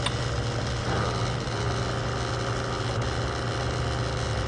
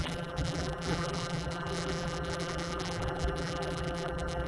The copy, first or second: second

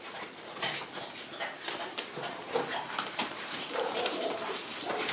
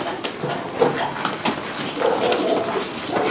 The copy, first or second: first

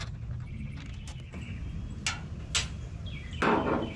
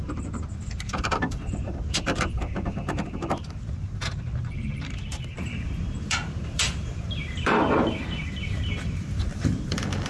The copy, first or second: second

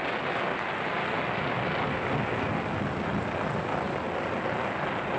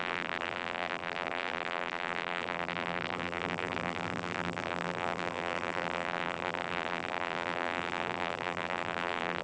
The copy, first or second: second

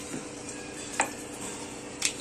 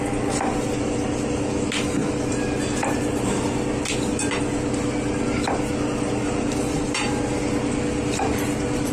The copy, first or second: first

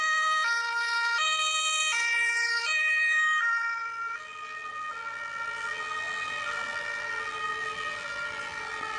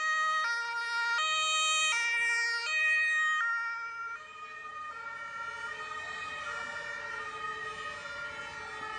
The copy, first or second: first